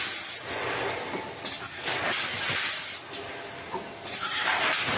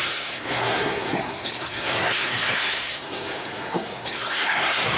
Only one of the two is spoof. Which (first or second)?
second